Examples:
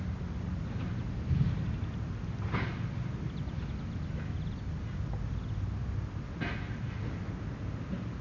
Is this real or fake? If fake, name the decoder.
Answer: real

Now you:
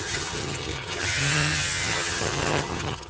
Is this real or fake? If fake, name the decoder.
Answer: fake, vocoder, HiFi-GAN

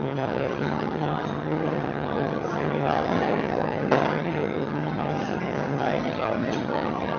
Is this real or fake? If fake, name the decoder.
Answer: fake, vocoder, HiFi-GAN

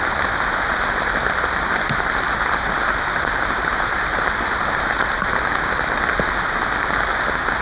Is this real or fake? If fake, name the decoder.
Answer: real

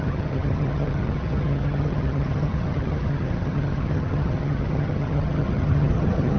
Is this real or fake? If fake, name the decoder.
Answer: fake, vocoder, HiFi-GAN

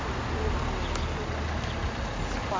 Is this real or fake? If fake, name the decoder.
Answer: real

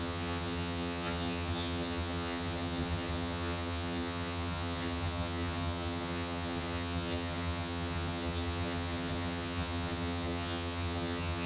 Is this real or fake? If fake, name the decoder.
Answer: fake, vocoder, HiFi-GAN